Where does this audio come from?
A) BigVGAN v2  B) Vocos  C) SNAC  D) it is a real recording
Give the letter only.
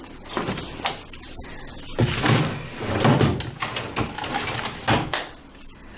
D